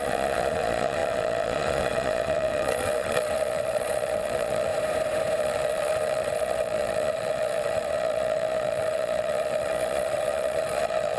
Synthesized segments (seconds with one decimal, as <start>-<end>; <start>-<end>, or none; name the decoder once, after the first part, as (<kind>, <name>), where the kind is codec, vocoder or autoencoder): 0.0-4.7 (vocoder, Vocos); 5.4-11.2